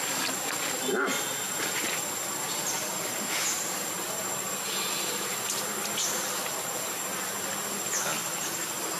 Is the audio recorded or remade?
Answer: recorded